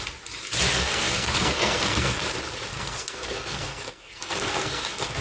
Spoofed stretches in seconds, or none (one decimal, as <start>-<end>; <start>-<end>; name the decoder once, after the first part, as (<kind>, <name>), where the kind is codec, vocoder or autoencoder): 0.7-2.2 (codec, SNAC); 2.7-5.2